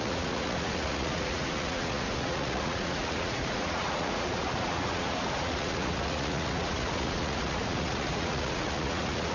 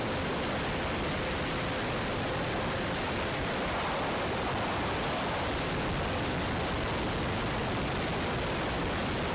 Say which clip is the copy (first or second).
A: first